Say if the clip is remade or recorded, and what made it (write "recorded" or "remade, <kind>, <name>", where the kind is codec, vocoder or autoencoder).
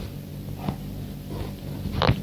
recorded